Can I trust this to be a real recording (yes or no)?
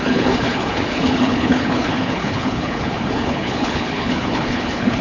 no